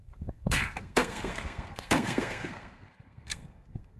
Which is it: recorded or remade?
remade